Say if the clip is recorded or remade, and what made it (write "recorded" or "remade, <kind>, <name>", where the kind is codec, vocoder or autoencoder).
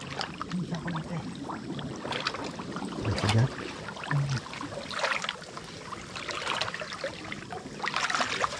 recorded